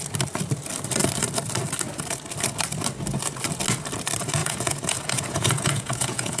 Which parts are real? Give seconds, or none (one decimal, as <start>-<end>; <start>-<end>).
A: 0.0-4.4